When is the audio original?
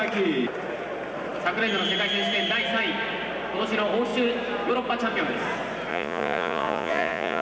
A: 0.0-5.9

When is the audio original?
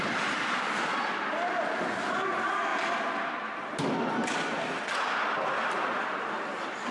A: 0.0-6.9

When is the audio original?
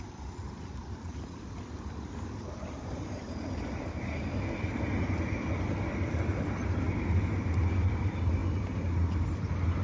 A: 0.0-9.8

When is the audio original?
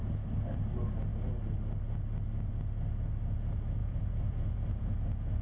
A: 0.0-3.8; 5.0-5.4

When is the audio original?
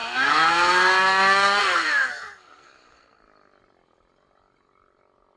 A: 3.2-5.4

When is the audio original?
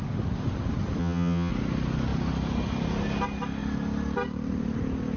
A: 0.0-1.0; 1.5-5.2